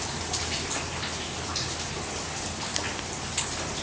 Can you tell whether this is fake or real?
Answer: real